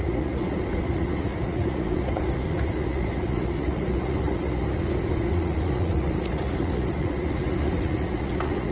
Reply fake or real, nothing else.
fake